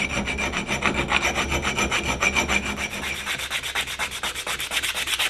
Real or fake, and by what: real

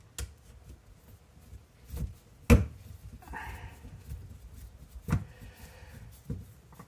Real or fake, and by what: real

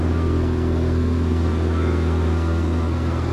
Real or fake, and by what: fake, codec, SNAC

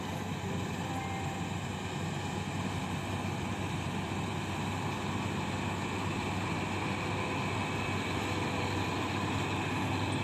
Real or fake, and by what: real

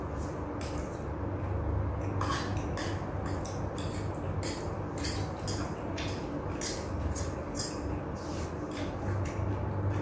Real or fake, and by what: real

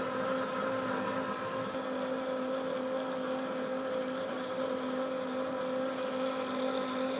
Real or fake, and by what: real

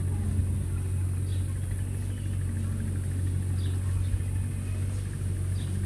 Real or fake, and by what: real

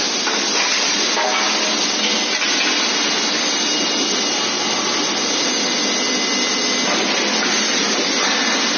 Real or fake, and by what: real